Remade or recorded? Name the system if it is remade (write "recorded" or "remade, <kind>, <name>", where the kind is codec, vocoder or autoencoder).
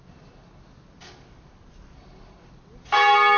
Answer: recorded